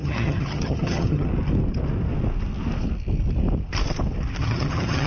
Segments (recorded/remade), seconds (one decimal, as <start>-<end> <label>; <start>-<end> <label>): 0.0-1.3 remade; 1.3-4.4 recorded; 4.4-5.1 remade